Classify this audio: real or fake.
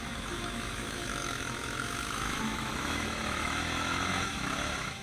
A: fake